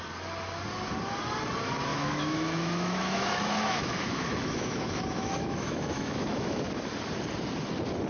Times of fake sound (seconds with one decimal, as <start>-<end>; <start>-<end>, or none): 1.9-6.7